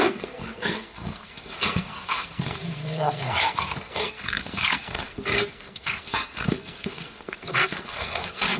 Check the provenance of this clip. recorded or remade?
remade